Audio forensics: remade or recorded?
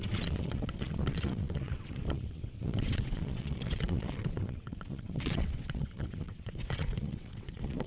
remade